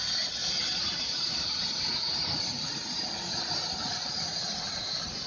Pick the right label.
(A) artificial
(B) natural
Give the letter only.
B